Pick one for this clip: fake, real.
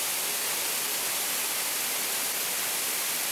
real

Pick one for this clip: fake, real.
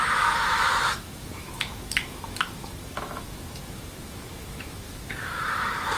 fake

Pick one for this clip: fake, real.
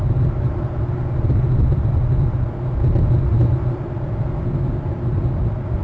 real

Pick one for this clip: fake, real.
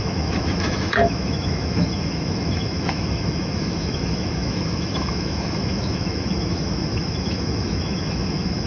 fake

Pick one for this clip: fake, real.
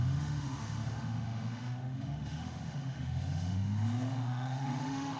fake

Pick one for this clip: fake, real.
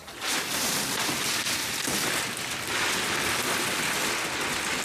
real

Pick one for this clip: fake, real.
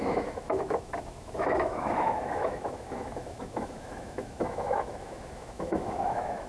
fake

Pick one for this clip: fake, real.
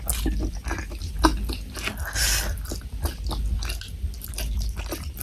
real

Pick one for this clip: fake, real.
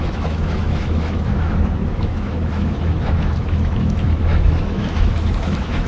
fake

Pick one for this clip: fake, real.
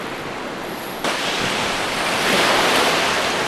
real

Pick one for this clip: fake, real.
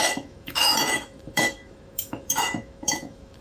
fake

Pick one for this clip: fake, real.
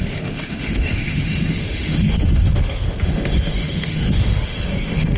fake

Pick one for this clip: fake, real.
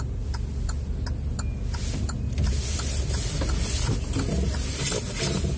real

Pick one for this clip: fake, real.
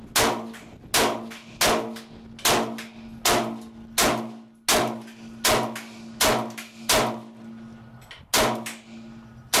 real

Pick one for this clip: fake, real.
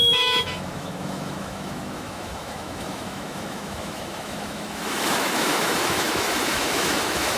fake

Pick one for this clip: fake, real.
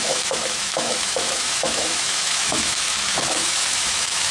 fake